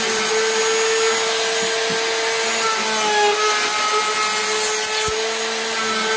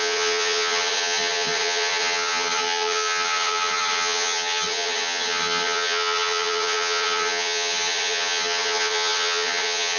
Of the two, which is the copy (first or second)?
second